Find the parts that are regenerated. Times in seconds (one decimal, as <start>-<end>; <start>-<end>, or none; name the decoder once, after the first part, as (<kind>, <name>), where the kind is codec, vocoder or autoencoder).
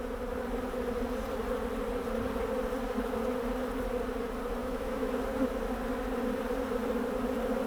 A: 4.6-5.1 (autoencoder, DAC-VAE)